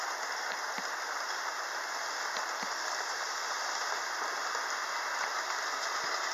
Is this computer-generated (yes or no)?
no